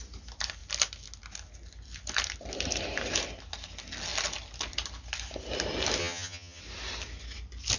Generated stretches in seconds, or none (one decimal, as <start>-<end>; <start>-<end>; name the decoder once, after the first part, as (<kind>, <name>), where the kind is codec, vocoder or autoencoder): 6.0-6.6 (vocoder, HiFi-GAN)